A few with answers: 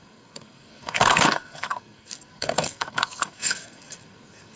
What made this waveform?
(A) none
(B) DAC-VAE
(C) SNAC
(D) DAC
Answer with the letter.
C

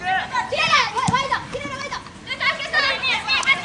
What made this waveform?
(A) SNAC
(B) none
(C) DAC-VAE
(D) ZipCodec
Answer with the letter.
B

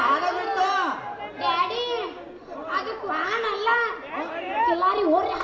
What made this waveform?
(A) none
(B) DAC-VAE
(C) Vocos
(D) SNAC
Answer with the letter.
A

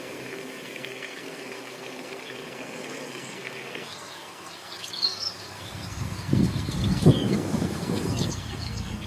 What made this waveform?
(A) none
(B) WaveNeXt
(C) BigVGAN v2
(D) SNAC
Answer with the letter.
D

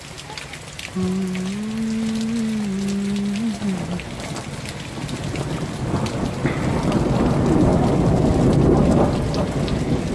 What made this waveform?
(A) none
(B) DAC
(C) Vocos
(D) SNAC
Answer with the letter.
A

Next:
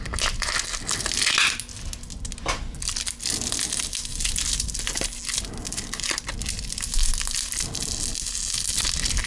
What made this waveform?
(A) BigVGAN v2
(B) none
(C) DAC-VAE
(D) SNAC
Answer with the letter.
B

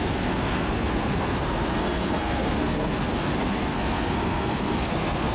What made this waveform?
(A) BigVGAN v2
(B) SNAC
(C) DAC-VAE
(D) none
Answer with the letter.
B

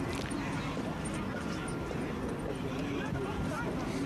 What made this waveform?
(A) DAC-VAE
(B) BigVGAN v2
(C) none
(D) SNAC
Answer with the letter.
C